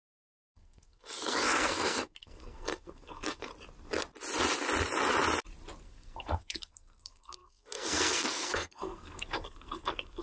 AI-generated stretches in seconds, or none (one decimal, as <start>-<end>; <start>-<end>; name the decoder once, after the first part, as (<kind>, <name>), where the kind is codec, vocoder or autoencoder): 0.0-3.5 (codec, SNAC); 5.8-10.2